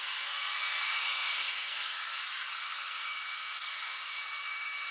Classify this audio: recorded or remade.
remade